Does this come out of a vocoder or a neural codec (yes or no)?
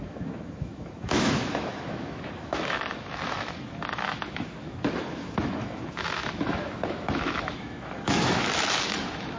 yes